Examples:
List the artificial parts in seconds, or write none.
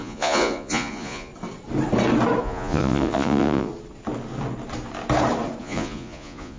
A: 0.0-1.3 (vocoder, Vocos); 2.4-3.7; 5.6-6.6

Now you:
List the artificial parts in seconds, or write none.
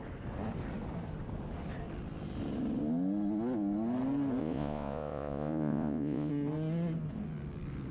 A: 4.4-6.3 (vocoder, Vocos)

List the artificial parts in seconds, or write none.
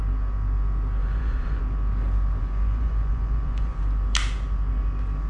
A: 1.0-1.6 (vocoder, Vocos); 2.4-3.8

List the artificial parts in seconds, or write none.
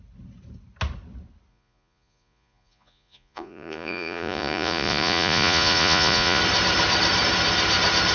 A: 1.5-6.4 (vocoder, Vocos)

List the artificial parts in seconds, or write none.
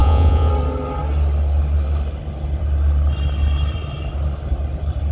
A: 0.0-0.5 (vocoder, Vocos)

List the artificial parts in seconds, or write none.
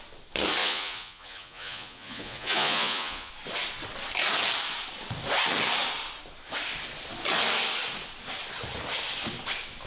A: 0.6-3.3 (vocoder, Vocos)